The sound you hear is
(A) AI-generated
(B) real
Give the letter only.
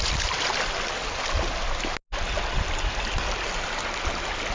B